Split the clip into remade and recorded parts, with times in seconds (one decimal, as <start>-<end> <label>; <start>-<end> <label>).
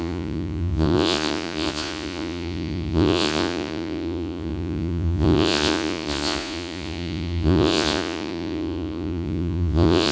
0.0-10.1 remade